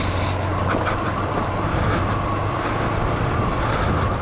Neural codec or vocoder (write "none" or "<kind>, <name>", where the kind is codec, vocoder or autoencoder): none